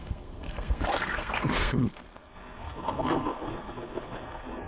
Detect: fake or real fake